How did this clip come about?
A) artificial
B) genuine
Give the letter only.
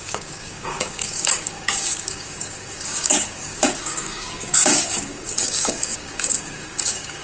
A